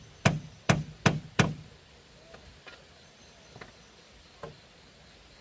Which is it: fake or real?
real